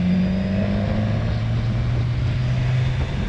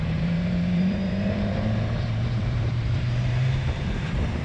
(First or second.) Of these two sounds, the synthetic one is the second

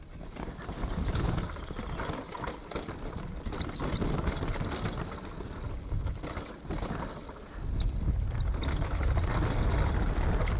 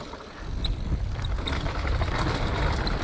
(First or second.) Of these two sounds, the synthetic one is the second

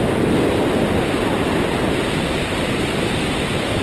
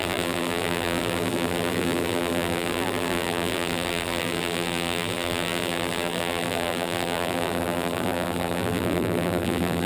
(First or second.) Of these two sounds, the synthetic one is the second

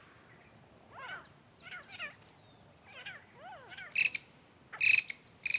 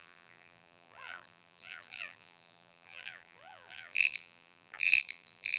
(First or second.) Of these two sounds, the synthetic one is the second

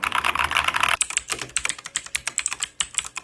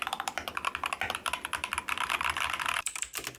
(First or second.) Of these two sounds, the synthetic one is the second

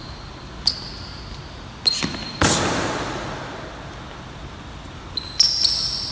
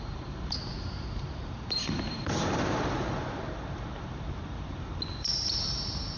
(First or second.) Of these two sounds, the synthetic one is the second